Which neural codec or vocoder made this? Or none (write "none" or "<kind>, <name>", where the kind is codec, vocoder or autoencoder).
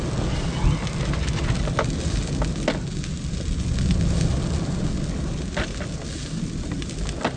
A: none